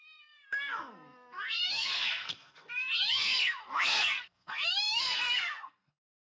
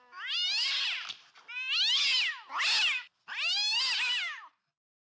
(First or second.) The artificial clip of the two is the first